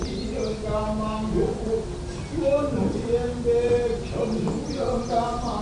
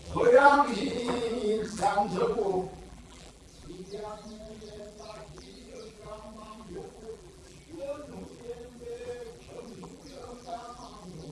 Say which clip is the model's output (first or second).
second